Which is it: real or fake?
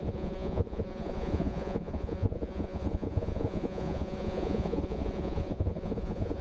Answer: fake